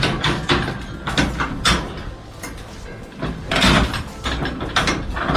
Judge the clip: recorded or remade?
recorded